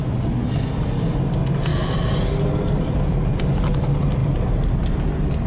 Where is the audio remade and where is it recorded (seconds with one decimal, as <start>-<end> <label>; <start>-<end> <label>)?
0.0-5.5 recorded